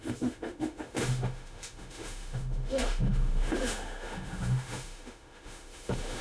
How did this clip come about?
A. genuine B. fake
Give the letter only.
B